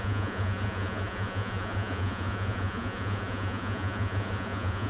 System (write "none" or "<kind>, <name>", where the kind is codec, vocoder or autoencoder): vocoder, Vocos